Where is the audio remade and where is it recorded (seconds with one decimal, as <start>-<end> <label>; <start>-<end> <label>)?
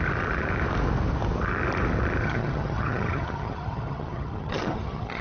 0.0-2.2 recorded; 2.2-5.2 remade